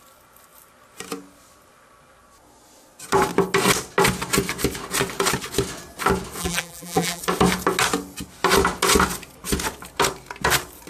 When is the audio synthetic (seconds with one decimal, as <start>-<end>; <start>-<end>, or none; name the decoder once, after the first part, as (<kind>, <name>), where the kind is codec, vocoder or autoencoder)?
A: 6.4-7.2 (vocoder, BigVGAN v2)